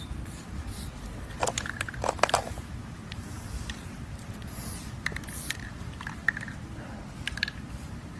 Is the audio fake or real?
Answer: real